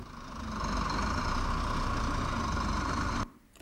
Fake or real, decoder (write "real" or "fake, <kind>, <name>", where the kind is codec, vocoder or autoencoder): real